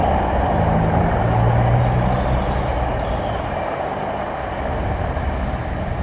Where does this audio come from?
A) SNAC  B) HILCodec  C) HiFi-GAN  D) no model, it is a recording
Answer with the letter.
D